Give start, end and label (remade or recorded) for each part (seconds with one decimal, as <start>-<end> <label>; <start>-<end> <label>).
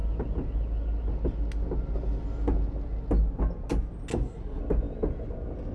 0.0-4.1 recorded; 4.1-4.6 remade; 4.6-5.7 recorded